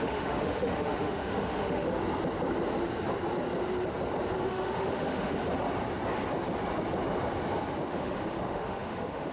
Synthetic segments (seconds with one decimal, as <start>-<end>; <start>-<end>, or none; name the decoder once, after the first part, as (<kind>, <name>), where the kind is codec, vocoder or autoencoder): 0.0-2.0 (autoencoder, DAC-VAE); 4.5-5.4; 7.9-9.3